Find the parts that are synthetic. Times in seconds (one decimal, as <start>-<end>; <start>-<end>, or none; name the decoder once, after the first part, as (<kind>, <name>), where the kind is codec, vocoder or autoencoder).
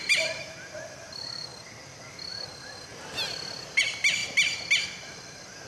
0.0-1.5 (vocoder, BigVGAN v2); 2.3-2.9; 3.8-4.2; 4.8-5.7